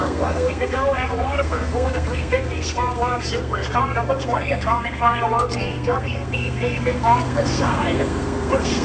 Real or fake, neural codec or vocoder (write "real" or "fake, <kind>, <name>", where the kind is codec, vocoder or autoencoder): fake, codec, SNAC